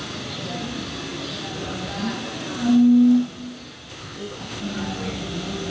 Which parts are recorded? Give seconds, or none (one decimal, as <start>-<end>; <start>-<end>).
0.0-3.9; 4.6-5.7